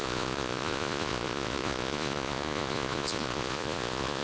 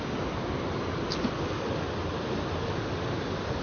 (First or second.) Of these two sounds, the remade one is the first